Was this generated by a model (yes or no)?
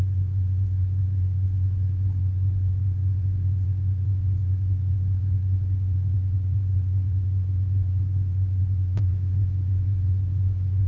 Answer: yes